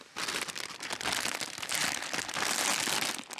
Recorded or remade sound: recorded